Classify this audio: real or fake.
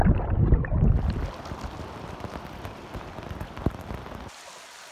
real